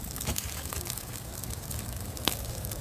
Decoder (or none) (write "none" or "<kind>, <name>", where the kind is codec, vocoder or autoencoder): codec, DAC